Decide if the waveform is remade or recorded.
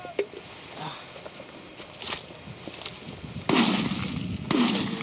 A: remade